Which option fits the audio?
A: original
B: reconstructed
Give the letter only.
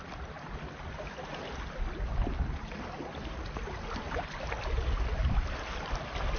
A